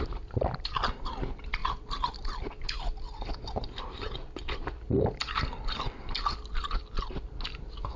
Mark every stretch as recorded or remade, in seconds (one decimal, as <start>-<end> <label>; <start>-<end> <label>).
0.0-8.0 recorded